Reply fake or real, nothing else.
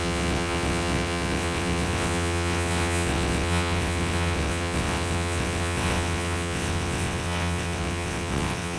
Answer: fake